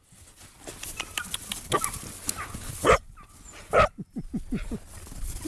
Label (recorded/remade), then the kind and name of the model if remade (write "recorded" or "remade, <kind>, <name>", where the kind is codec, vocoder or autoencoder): recorded